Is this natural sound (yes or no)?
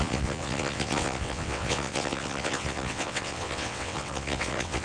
no